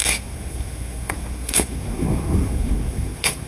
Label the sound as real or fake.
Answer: fake